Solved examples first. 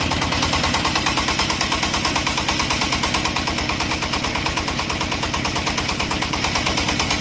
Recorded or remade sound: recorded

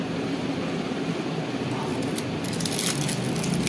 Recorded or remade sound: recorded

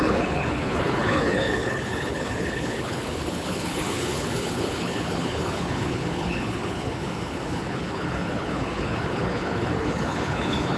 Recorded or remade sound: remade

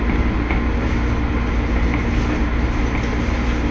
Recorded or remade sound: recorded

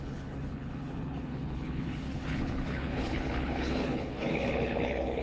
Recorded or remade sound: remade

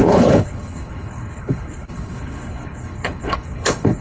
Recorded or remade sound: remade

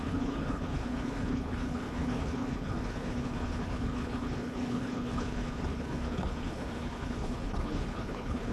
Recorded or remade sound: remade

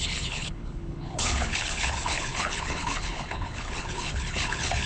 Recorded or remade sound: remade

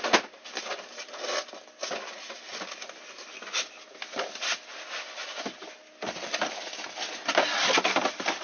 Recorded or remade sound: recorded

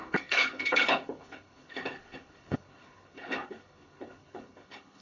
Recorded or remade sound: remade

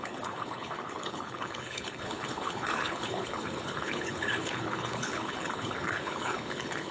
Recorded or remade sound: remade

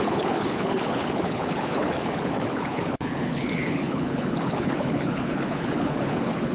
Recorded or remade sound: remade